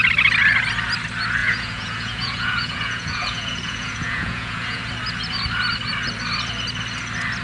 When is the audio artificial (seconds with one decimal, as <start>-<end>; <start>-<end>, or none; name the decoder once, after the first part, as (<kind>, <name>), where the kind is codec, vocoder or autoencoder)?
1.4-4.9 (vocoder, Vocos)